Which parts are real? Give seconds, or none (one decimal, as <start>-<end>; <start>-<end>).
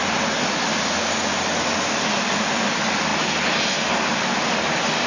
0.0-5.1